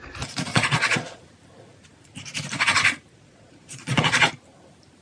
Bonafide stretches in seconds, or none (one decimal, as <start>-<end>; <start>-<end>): 0.0-0.5; 1.2-3.1; 4.3-5.0